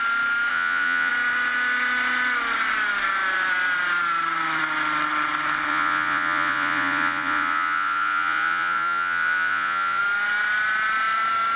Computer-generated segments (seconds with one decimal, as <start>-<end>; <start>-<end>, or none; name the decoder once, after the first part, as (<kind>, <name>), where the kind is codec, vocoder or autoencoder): 0.5-1.1 (vocoder, Vocos); 5.7-10.0